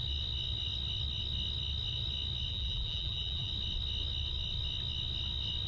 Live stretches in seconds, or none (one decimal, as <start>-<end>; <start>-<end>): 0.0-2.5; 3.5-5.7